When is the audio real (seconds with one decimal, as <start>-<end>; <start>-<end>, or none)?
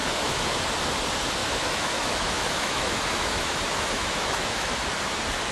0.6-1.4; 4.7-5.5